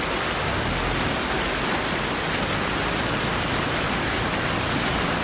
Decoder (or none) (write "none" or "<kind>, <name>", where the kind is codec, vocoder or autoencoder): none